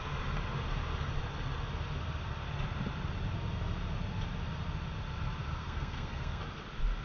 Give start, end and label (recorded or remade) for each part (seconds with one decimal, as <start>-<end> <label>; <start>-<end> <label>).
0.0-5.6 recorded; 5.6-6.4 remade; 6.4-7.0 recorded